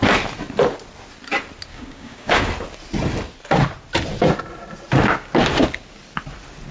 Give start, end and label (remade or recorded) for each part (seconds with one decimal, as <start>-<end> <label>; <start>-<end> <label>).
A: 0.0-1.7 recorded; 1.7-2.5 remade; 2.5-6.7 recorded